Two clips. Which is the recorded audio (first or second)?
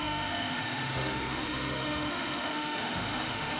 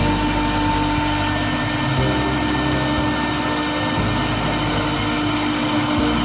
second